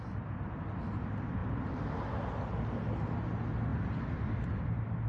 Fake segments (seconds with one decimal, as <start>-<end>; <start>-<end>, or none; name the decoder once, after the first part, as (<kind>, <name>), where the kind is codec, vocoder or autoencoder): 3.7-5.1 (vocoder, BigVGAN v2)

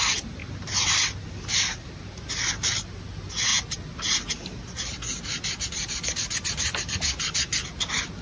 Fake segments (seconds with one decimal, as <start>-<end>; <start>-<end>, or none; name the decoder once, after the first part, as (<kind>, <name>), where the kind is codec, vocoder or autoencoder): none

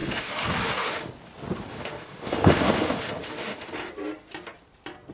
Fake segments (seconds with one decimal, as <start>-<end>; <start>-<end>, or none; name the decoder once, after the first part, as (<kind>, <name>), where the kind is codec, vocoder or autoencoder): 0.0-1.1 (autoencoder, DAC-VAE); 1.7-3.9

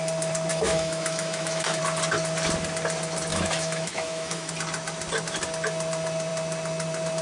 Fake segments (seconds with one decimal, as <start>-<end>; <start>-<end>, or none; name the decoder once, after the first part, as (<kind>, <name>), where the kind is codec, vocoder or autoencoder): 0.5-1.8 (autoencoder, DAC-VAE); 3.3-4.5

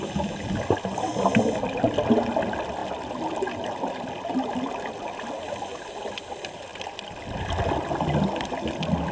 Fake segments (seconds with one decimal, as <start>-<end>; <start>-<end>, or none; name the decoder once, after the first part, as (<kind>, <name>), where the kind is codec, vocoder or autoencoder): none

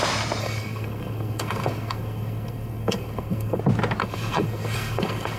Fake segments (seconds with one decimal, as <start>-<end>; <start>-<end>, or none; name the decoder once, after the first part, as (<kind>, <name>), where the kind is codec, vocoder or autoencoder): 0.4-3.6 (codec, SNAC); 4.0-5.4